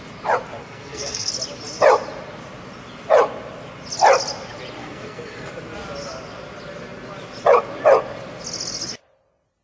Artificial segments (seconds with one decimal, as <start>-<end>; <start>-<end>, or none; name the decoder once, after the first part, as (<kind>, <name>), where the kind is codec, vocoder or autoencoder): 0.6-1.3 (codec, SNAC); 4.8-5.5